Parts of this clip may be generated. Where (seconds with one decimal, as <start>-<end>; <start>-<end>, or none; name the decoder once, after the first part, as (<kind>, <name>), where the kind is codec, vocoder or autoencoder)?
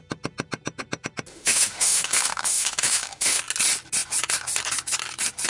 1.3-3.4 (autoencoder, DAC-VAE)